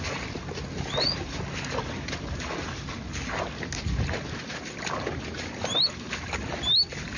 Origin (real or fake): real